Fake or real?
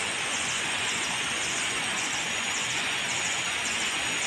fake